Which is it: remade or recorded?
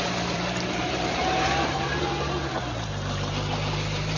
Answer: remade